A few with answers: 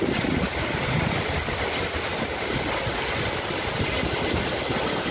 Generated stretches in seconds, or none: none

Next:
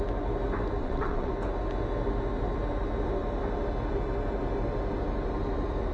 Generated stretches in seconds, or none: 0.8-1.3